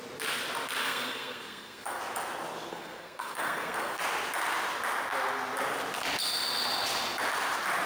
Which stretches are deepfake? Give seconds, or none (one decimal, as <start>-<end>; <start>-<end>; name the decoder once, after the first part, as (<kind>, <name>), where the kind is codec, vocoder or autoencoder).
0.8-2.0 (codec, SNAC); 2.7-4.0